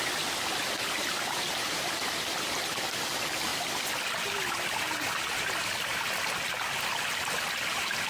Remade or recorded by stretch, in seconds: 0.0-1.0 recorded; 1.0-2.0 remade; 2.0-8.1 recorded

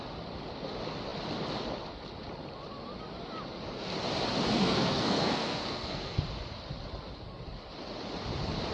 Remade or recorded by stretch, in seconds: 0.0-4.5 recorded; 4.5-6.2 remade; 6.2-8.7 recorded

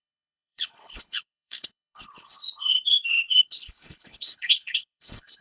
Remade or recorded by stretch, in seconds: 0.0-5.4 remade